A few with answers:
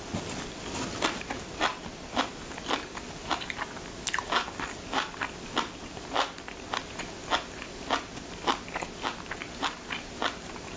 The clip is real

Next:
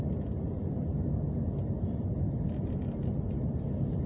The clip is real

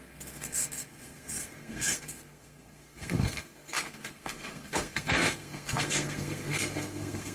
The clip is fake